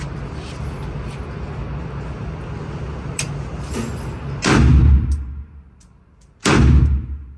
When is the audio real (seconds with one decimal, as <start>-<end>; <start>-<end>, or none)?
0.0-7.4